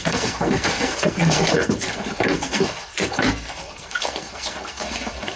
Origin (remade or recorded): remade